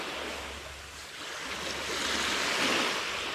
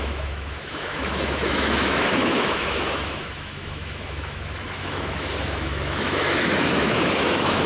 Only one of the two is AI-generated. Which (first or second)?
second